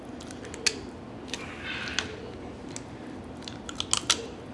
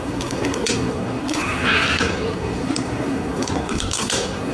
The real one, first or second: first